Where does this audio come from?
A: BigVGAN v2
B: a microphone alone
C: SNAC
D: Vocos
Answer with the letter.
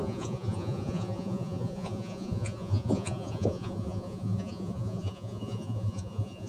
D